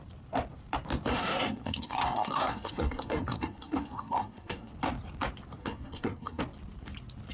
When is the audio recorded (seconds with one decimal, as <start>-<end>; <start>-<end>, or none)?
0.0-1.1; 4.7-5.6; 6.4-7.3